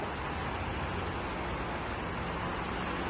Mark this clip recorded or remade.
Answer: recorded